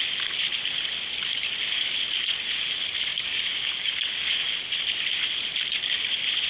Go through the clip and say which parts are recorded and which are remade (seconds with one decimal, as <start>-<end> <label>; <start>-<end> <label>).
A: 0.0-3.1 recorded; 3.1-4.8 remade; 4.8-6.5 recorded